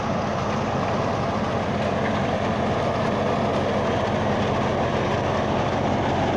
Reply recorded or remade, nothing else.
recorded